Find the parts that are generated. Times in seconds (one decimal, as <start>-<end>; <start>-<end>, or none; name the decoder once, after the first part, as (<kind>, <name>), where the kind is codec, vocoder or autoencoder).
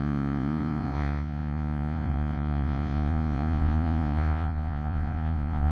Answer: 0.0-5.7 (vocoder, Vocos)